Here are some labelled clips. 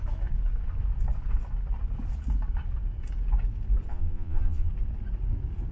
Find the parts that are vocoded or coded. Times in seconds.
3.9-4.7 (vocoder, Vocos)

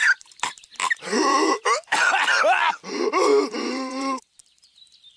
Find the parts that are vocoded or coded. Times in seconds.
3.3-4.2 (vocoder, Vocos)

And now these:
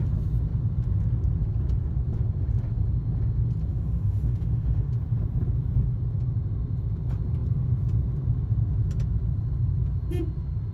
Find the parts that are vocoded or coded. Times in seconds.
3.7-4.9 (autoencoder, DAC-VAE)

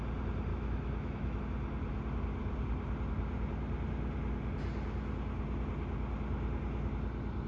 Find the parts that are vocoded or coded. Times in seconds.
0.5-1.4 (autoencoder, DAC-VAE)

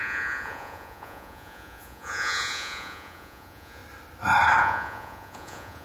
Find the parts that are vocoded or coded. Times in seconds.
0.0-3.8 (vocoder, Vocos); 4.6-5.8

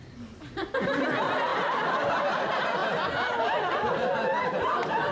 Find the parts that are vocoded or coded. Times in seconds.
none

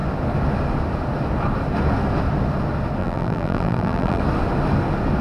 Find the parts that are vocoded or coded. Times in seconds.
3.0-4.2 (vocoder, BigVGAN v2)

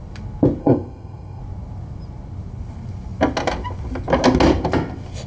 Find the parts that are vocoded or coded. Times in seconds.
0.6-1.4 (codec, SNAC)